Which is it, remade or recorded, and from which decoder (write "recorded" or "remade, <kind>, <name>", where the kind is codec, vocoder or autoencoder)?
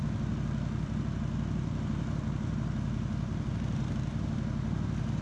recorded